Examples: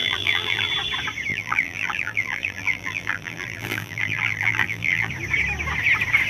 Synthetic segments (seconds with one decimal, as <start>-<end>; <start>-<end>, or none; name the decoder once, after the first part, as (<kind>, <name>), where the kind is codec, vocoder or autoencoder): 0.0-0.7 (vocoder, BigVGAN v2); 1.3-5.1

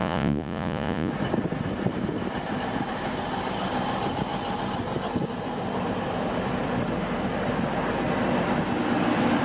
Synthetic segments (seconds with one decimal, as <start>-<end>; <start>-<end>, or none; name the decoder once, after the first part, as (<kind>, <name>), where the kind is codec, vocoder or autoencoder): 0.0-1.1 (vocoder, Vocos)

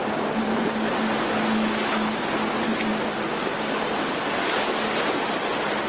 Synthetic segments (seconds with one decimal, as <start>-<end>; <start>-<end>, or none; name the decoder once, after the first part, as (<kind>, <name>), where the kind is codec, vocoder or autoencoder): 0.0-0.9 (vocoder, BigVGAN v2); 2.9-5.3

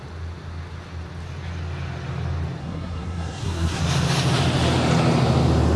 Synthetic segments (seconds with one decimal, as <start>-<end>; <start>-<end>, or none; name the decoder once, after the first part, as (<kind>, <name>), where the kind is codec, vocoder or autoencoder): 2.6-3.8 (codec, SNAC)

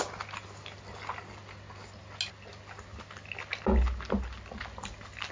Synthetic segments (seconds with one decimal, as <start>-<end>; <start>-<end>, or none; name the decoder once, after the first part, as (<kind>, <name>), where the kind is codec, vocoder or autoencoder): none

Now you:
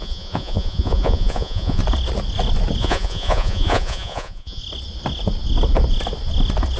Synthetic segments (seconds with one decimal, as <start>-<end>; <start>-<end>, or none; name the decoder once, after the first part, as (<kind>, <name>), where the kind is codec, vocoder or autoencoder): 0.0-1.8 (vocoder, Vocos); 2.8-4.6